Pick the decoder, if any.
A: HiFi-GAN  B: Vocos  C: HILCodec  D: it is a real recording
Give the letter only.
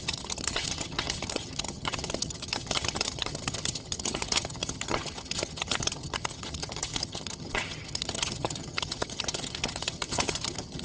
A